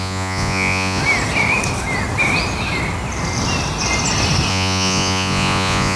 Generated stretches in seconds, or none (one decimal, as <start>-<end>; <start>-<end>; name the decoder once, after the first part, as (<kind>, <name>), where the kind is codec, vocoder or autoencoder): 0.0-1.0 (vocoder, Vocos); 4.5-6.0